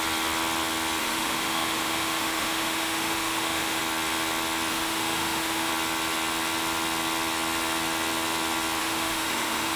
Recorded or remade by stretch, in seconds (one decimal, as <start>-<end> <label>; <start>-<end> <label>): 0.0-1.0 recorded; 1.0-3.8 remade; 3.8-4.7 recorded; 4.7-5.7 remade; 5.7-8.8 recorded; 8.8-9.8 remade